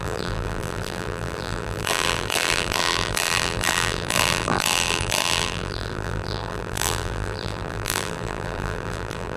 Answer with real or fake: fake